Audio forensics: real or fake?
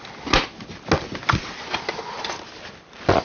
real